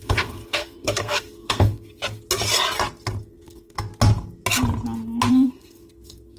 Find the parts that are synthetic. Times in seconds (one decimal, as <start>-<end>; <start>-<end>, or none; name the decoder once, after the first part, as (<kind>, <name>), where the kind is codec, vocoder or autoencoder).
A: 0.0-2.0 (codec, SNAC); 3.2-3.9; 5.3-6.4